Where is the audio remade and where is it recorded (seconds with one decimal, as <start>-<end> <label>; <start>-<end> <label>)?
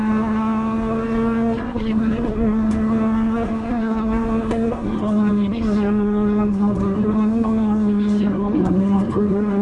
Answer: 0.0-9.6 remade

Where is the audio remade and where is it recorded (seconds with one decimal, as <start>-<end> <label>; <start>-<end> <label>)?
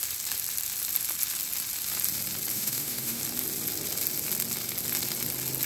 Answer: 0.0-2.5 recorded; 2.5-3.2 remade; 3.2-5.7 recorded